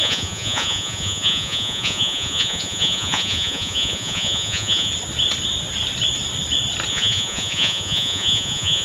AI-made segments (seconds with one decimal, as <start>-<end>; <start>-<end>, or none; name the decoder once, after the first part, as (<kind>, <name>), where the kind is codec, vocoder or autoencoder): 0.0-4.9 (vocoder, Vocos); 6.9-8.8